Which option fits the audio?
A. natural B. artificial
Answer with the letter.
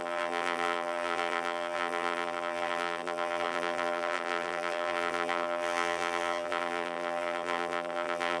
B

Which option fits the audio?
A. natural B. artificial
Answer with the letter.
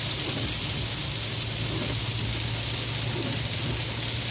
A